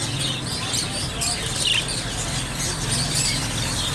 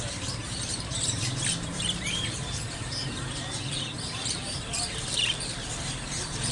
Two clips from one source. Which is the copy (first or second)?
second